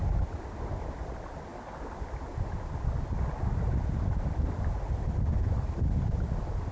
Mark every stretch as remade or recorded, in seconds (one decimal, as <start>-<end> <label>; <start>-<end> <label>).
0.0-6.7 recorded